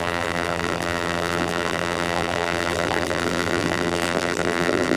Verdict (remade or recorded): remade